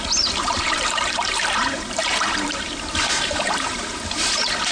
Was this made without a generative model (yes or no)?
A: no